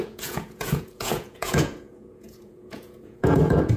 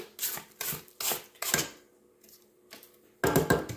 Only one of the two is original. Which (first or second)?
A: second